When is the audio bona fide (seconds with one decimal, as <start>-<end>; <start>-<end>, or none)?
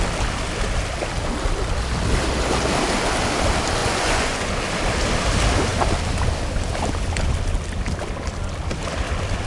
0.0-3.8; 4.5-9.5